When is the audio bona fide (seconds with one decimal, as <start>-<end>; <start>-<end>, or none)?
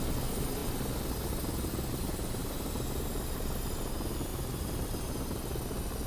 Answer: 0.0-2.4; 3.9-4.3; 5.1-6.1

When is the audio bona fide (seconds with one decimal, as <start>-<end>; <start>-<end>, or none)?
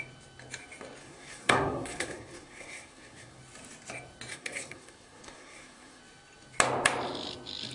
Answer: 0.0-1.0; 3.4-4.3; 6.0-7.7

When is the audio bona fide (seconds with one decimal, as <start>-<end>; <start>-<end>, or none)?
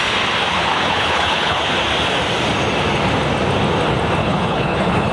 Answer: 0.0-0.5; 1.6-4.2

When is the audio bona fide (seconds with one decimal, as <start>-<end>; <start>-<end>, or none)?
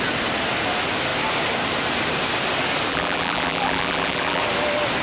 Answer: 0.0-2.9; 4.4-5.0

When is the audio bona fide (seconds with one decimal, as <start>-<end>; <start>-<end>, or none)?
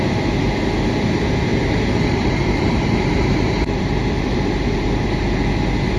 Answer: 0.0-1.5; 5.1-6.0